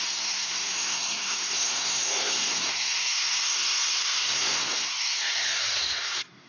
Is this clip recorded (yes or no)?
no